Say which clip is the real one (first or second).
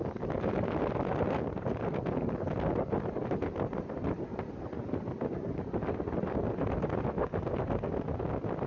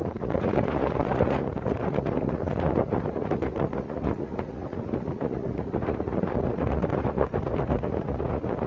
first